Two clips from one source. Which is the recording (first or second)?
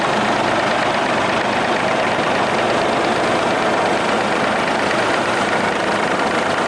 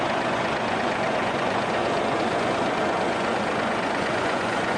first